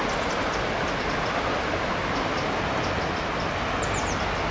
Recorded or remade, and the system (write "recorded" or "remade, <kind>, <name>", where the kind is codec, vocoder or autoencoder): recorded